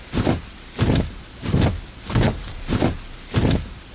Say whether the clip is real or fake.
real